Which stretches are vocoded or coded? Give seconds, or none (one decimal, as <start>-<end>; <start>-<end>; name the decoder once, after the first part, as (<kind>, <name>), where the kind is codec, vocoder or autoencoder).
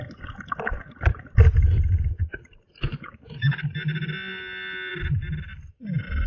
2.9-3.6 (codec, DAC)